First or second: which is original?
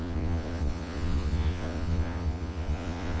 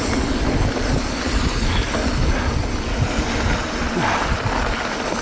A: second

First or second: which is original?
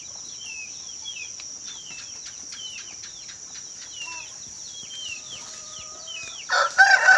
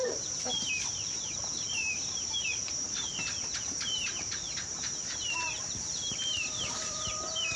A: first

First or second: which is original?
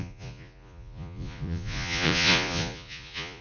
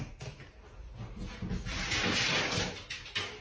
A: second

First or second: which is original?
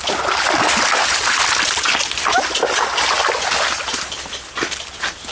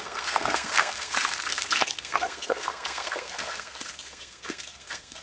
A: first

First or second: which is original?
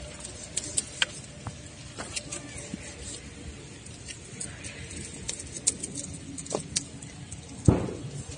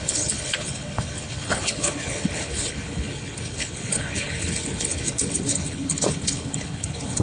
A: first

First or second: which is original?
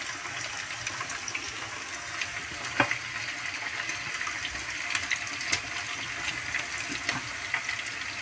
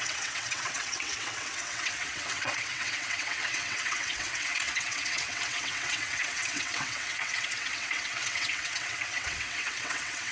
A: first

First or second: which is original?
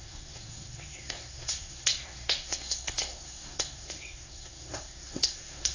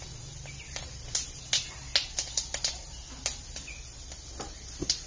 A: second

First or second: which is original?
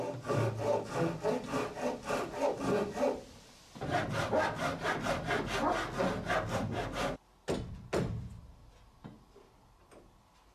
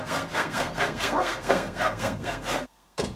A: first